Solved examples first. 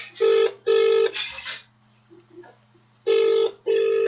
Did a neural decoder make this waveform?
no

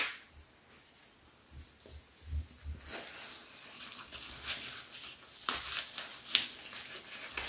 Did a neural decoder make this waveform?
no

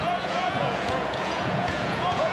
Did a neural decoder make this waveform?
yes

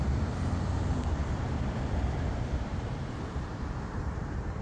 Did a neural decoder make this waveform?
yes